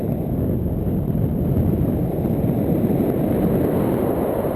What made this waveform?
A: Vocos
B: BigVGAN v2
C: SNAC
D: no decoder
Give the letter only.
D